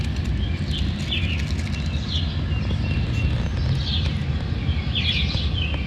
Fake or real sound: real